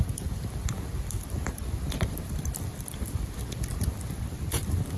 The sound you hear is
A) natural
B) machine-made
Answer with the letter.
B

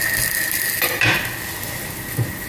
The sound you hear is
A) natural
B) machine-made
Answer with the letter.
A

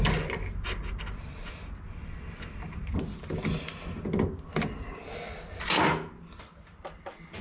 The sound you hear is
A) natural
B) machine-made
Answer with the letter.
A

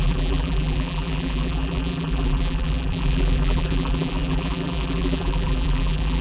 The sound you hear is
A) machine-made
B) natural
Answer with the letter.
A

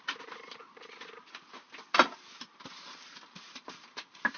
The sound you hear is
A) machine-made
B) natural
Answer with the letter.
B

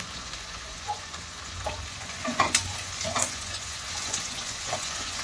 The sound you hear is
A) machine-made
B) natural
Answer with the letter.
A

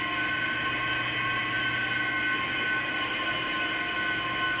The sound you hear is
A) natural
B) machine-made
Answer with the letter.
A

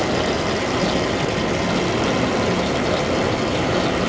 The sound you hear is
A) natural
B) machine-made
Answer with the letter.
A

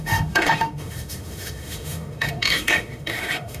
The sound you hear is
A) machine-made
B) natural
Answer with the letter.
A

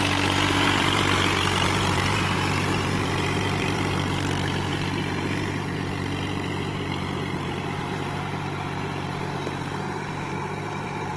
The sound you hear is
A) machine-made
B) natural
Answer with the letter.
A